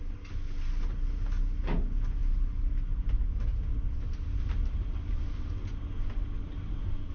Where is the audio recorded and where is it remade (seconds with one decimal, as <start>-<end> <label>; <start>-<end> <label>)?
0.0-7.1 recorded